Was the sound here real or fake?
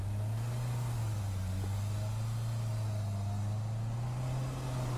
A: real